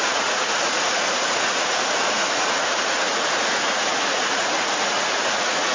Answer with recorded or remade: remade